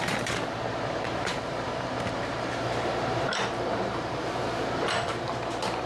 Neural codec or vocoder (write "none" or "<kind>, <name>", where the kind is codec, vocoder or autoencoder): vocoder, BigVGAN v2